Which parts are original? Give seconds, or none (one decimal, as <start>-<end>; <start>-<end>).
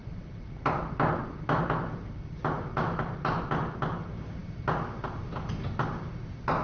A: 0.0-6.6